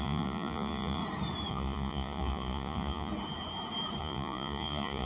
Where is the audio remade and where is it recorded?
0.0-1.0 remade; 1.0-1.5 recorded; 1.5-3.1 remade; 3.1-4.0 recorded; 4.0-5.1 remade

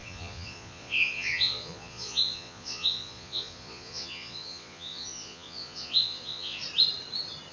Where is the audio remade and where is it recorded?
0.0-6.6 remade; 6.6-7.5 recorded

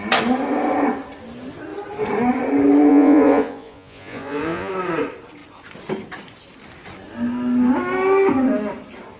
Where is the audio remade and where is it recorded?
0.0-2.9 recorded; 2.9-4.7 remade; 4.7-9.2 recorded

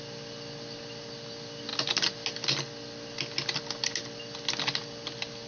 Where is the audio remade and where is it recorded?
0.0-5.5 recorded

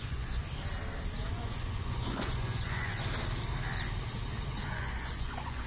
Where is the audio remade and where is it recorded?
0.0-0.4 remade; 0.4-1.3 recorded; 1.3-2.9 remade; 2.9-4.7 recorded; 4.7-5.7 remade

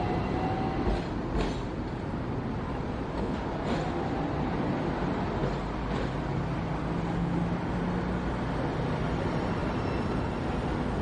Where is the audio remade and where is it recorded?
0.0-11.0 recorded

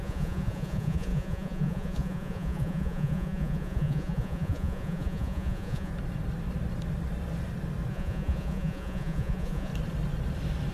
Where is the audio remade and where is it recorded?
0.0-5.9 remade; 5.9-7.9 recorded; 7.9-9.7 remade; 9.7-10.7 recorded